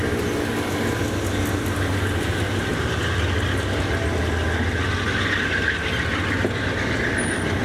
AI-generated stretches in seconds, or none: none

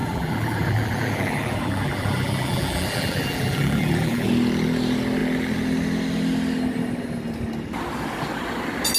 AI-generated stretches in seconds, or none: 0.0-4.3 (vocoder, BigVGAN v2)

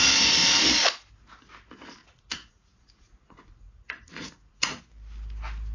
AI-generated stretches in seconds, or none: 2.0-4.8 (vocoder, Vocos)

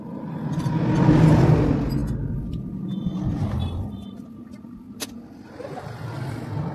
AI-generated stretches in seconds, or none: none

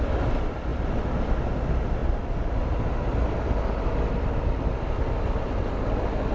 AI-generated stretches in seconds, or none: none

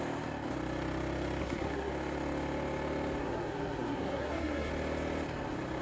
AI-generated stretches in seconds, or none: 1.4-1.9 (codec, SNAC); 3.2-4.7

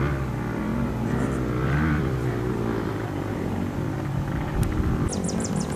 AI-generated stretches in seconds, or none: 0.7-3.8 (vocoder, BigVGAN v2)

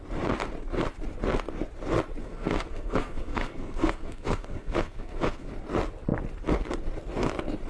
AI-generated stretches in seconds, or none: 2.2-5.5 (codec, SNAC)